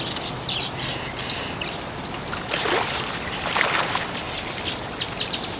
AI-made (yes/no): no